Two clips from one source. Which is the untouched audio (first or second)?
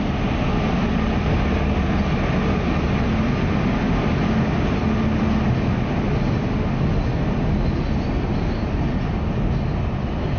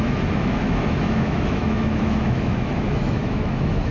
first